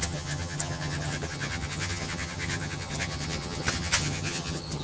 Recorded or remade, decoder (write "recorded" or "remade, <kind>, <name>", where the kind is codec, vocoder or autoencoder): remade, vocoder, HiFi-GAN